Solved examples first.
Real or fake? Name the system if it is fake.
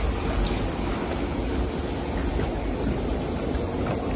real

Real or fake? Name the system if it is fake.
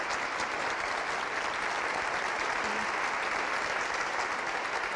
real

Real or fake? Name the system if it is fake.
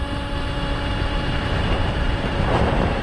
fake, vocoder, BigVGAN v2